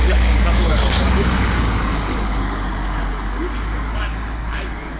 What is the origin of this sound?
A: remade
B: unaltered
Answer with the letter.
A